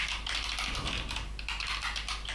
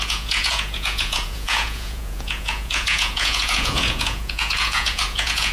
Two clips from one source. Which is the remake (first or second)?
second